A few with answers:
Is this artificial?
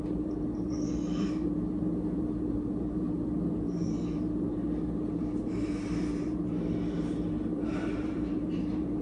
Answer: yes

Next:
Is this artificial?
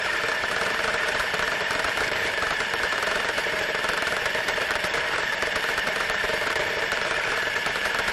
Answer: yes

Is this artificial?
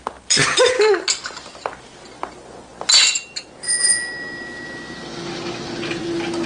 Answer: no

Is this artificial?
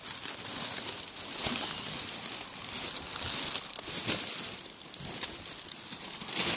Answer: no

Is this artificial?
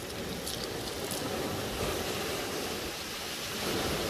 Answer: no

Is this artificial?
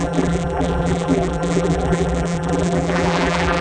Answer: yes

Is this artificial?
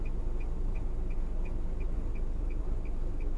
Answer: yes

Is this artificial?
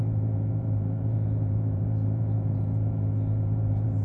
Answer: yes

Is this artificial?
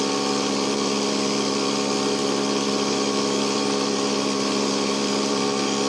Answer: yes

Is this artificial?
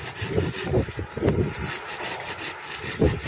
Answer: no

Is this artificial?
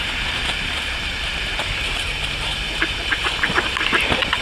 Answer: yes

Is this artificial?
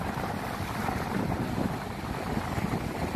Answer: yes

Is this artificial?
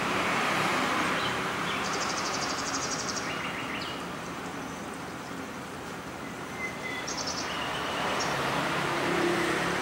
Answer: yes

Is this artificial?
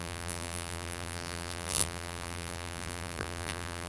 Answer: yes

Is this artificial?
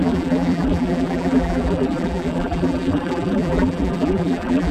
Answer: yes